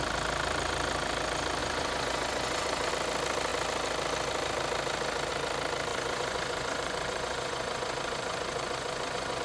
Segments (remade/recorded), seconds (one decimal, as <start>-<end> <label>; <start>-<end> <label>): 0.0-1.6 recorded; 1.6-2.9 remade; 2.9-5.9 recorded; 5.9-9.4 remade